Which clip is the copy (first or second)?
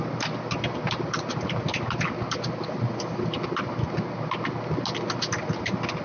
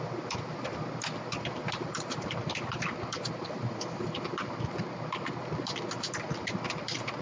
second